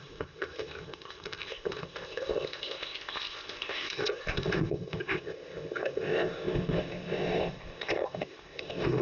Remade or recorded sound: remade